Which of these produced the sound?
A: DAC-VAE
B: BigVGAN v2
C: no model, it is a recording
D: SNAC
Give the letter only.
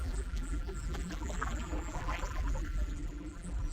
B